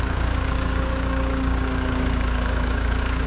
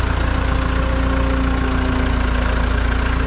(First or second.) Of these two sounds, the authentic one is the second